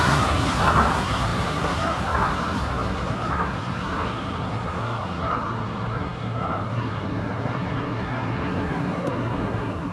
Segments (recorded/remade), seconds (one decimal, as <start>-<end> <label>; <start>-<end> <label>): 0.0-9.9 remade